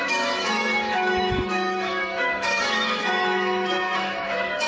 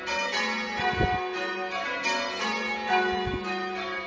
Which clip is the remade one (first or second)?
first